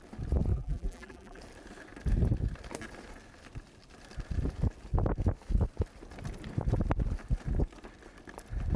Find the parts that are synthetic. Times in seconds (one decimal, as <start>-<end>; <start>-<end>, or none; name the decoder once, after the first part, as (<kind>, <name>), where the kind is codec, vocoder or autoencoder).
0.5-1.4 (vocoder, BigVGAN v2)